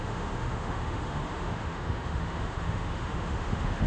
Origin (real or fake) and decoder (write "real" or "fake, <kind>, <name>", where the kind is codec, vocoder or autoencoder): fake, autoencoder, DAC-VAE